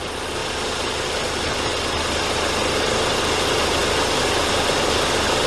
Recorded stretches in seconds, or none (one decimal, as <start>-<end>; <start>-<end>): 0.0-5.5